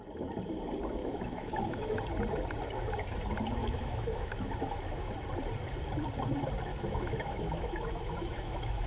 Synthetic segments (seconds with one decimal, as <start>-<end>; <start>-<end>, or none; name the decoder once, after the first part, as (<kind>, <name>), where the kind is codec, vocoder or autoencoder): 1.0-2.0 (autoencoder, DAC-VAE); 3.6-5.1; 6.7-8.9